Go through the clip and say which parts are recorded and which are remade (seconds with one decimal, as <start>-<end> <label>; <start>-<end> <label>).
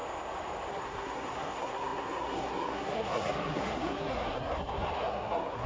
0.0-0.7 recorded; 0.7-5.7 remade